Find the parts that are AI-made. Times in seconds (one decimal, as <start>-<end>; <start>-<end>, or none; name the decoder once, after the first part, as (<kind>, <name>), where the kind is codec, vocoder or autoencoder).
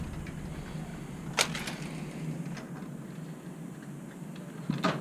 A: none